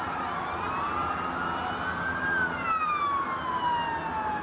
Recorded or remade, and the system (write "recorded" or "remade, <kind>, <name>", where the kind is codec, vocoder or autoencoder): recorded